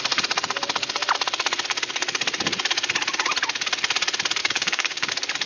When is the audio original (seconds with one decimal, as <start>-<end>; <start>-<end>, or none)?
0.0-4.4; 5.1-5.5